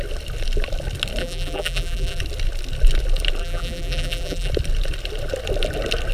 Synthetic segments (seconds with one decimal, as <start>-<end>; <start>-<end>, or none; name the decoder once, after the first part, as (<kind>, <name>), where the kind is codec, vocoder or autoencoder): 1.2-2.2 (vocoder, BigVGAN v2); 3.4-4.5